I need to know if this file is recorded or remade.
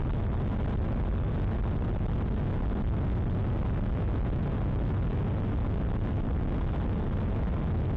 recorded